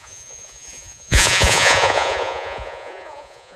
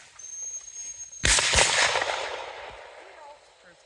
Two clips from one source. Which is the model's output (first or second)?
first